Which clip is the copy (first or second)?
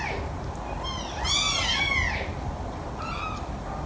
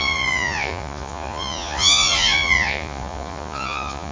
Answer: second